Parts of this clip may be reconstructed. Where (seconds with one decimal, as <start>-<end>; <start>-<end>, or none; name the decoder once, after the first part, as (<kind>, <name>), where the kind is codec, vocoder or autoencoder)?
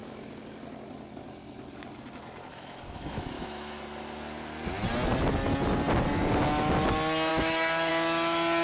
2.5-3.8 (autoencoder, DAC-VAE); 7.3-7.9